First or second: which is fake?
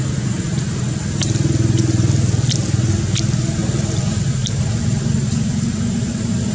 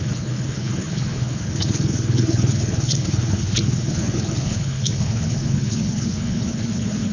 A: second